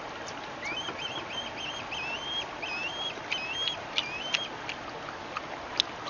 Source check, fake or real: real